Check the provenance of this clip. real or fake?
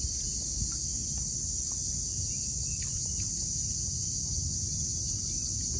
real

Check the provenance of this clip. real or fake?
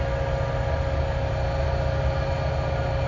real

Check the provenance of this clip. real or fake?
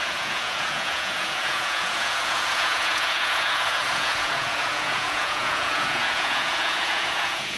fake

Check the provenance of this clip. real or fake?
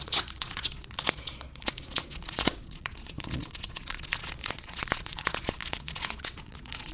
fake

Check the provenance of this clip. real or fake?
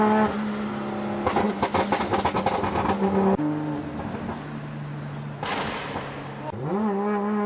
real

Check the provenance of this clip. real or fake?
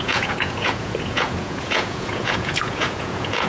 fake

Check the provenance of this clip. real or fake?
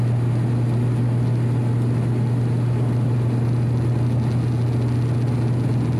real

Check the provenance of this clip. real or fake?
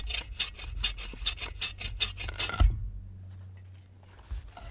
real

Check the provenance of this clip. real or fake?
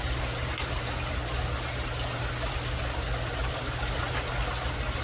real